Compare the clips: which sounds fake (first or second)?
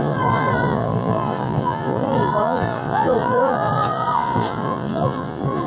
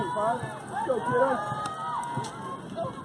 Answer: first